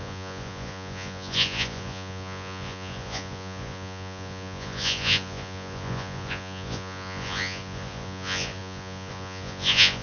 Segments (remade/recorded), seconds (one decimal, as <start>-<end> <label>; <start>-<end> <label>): 0.0-10.0 remade

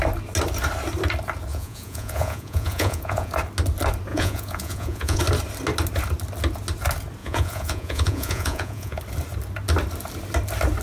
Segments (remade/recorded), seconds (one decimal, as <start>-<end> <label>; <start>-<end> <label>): 0.0-1.5 recorded; 1.5-3.3 remade; 3.3-4.1 recorded; 4.1-5.2 remade; 5.2-7.2 recorded; 7.2-9.0 remade; 9.0-10.8 recorded

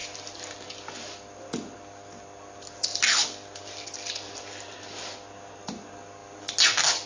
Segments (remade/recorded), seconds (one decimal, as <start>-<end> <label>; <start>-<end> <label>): 0.0-7.1 recorded

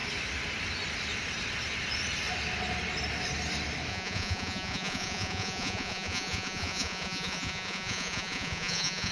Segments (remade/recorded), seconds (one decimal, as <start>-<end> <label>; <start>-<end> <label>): 0.0-3.9 recorded; 3.9-9.1 remade

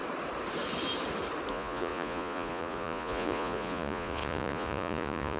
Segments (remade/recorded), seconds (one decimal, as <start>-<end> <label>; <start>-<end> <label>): 0.0-1.5 recorded; 1.5-5.4 remade

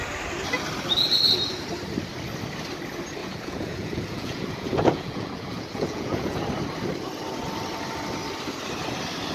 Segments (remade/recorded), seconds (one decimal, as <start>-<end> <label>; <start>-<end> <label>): 0.0-3.2 recorded; 3.2-6.4 remade; 6.4-9.3 recorded